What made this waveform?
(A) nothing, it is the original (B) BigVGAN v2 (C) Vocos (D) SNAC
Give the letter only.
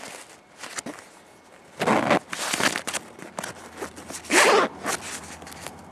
A